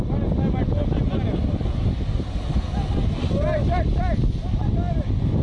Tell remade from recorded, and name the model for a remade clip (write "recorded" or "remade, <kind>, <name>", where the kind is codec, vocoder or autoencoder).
recorded